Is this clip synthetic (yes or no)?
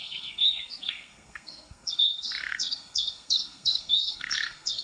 yes